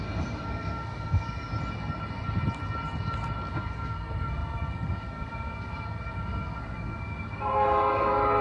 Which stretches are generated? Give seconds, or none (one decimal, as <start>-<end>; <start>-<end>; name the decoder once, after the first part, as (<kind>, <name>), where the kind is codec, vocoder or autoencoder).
0.0-1.5 (codec, SNAC); 3.5-8.4